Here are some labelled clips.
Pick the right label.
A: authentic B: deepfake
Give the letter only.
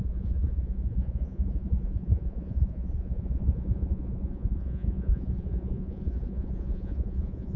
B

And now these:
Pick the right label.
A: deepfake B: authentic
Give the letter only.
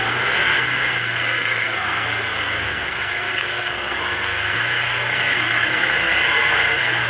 A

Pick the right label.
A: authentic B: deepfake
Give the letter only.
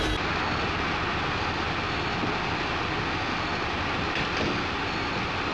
A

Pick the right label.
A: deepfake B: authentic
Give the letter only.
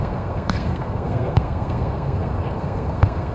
A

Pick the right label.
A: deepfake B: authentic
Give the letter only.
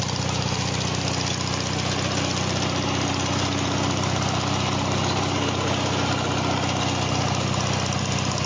B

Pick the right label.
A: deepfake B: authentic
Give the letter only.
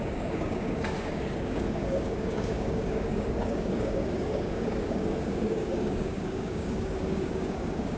A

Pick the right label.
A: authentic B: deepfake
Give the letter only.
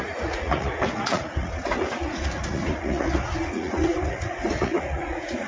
B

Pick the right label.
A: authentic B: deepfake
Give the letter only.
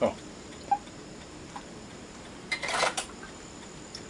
B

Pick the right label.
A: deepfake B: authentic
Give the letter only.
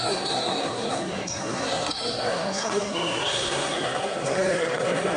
A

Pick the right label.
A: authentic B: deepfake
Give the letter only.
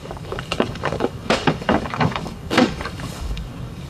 B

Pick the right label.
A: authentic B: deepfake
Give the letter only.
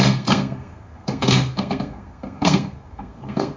B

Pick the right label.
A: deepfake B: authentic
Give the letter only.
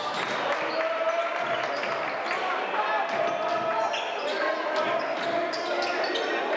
B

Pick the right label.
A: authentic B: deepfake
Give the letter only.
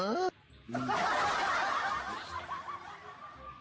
A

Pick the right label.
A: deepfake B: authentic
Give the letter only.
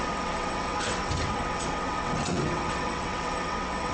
A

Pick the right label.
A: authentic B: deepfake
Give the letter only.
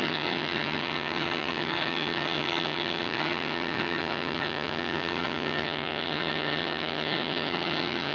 B